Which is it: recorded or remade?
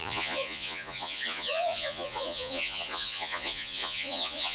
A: remade